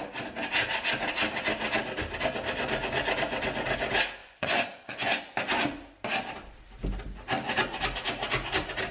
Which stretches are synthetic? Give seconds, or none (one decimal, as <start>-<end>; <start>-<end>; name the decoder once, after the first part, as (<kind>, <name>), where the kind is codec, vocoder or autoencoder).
4.2-5.2 (vocoder, Vocos)